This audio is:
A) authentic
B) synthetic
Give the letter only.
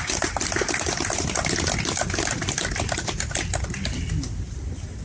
A